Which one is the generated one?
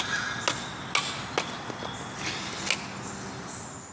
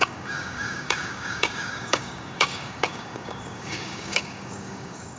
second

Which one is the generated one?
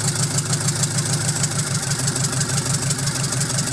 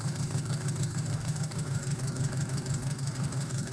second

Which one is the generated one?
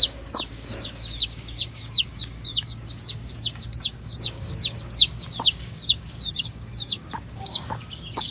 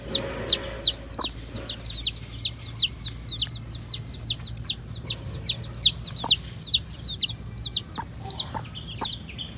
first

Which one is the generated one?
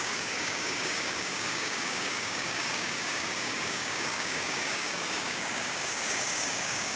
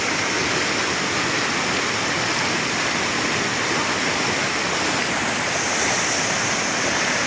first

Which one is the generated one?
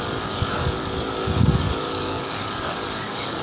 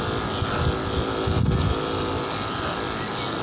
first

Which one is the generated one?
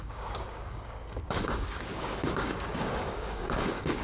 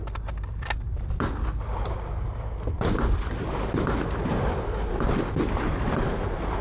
first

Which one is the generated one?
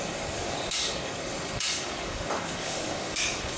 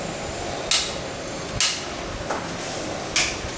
first